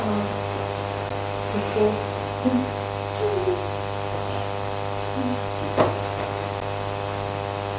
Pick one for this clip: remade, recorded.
recorded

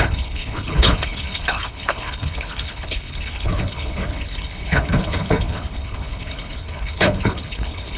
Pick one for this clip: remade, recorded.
remade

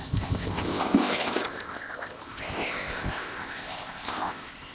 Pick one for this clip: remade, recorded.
remade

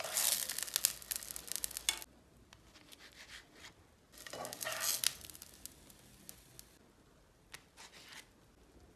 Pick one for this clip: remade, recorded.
recorded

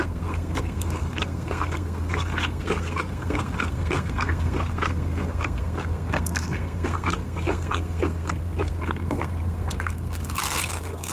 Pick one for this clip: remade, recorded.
remade